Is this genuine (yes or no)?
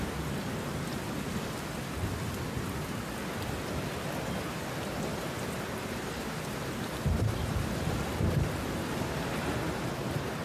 yes